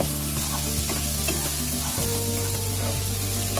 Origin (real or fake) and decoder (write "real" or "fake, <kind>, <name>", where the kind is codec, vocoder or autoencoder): real